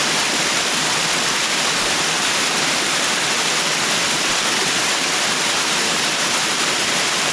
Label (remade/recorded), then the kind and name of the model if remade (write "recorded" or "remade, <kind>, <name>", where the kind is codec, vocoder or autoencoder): recorded